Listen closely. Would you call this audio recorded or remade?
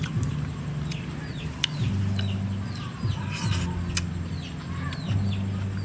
recorded